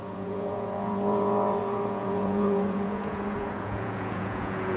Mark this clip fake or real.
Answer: fake